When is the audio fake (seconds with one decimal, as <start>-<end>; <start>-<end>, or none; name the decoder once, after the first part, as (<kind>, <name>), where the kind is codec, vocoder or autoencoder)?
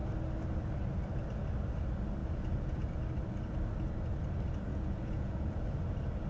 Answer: 2.2-3.0 (vocoder, Vocos); 4.7-5.8